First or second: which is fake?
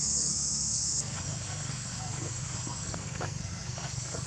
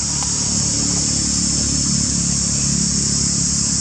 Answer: first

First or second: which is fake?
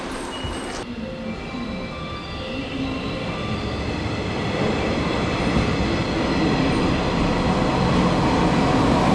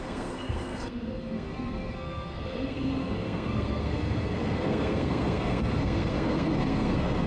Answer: second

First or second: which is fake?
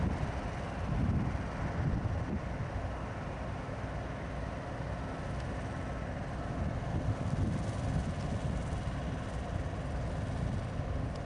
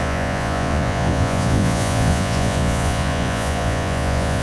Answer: second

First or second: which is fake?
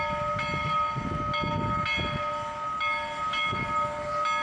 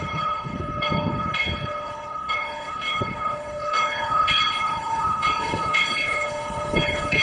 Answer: second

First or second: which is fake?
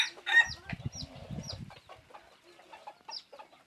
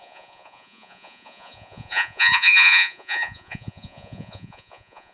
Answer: second